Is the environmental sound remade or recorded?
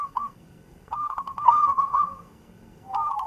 remade